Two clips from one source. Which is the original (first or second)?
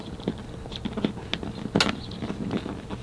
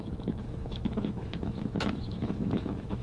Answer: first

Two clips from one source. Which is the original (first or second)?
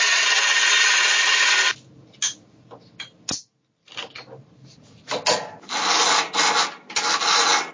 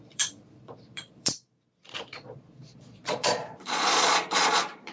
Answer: first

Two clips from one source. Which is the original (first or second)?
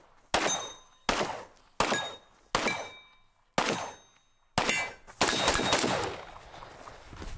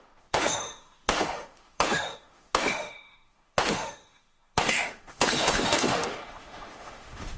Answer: first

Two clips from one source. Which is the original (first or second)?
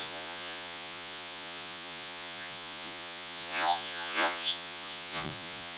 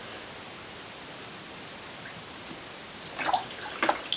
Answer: second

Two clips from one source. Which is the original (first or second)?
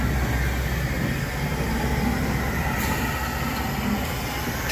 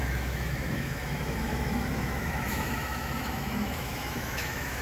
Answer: first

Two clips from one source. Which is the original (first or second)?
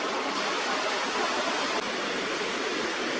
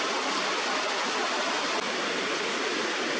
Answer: second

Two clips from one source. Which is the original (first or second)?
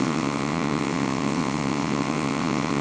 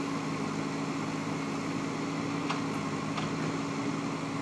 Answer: second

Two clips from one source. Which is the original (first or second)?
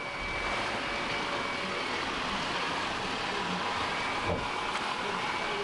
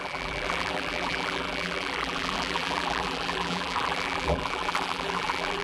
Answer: first